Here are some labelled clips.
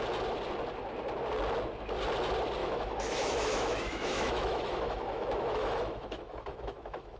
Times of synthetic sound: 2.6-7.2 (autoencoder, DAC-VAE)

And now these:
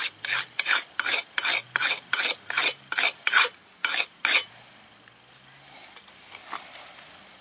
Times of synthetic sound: 2.6-3.2 (vocoder, BigVGAN v2)

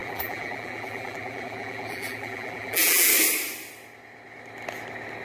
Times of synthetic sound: 0.0-3.1 (vocoder, BigVGAN v2)

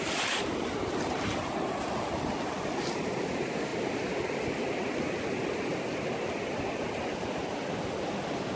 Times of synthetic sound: none

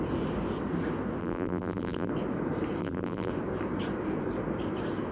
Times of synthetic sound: 1.2-2.1 (vocoder, BigVGAN v2); 2.8-3.3

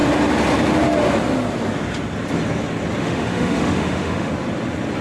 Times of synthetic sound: 3.0-4.3 (autoencoder, DAC-VAE)

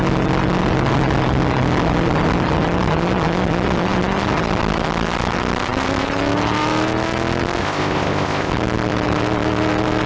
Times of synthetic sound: 7.6-8.5 (codec, ZipCodec)

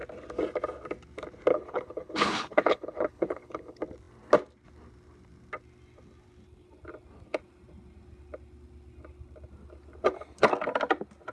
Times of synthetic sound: 1.5-3.8 (codec, HILCodec)